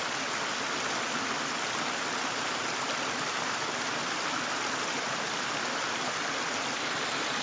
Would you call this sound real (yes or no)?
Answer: yes